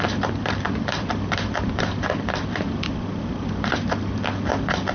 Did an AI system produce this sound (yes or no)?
yes